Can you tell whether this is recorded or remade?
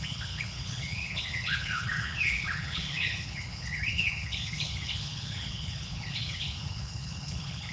remade